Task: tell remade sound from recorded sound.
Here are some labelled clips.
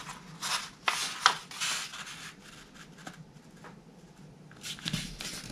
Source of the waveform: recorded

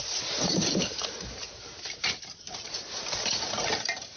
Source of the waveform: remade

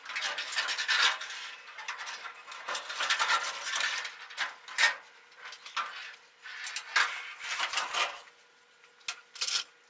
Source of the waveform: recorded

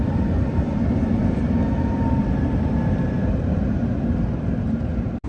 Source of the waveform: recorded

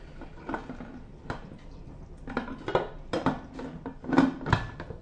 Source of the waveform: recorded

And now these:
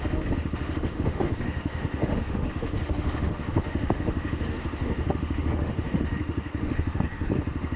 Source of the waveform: remade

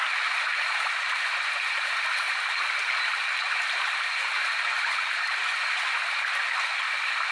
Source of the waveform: recorded